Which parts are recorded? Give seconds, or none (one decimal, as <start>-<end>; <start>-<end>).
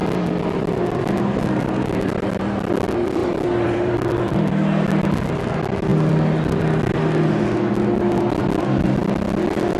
2.7-3.2; 4.3-9.8